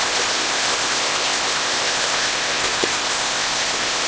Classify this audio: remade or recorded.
remade